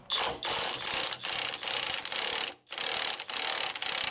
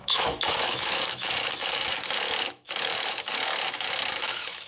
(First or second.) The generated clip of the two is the second